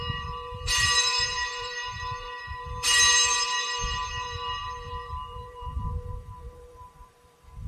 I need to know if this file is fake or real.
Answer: fake